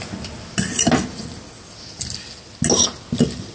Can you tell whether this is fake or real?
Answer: real